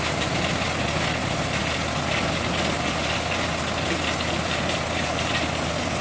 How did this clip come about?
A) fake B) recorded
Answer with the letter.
B